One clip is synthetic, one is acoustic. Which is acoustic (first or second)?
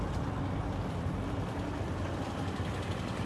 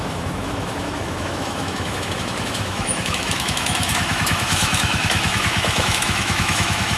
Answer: first